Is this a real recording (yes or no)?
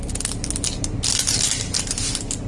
yes